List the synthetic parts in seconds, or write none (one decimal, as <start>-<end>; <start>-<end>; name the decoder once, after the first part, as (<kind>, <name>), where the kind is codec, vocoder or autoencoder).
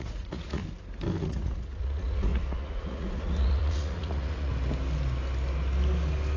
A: 0.0-0.6 (vocoder, Vocos); 1.2-4.5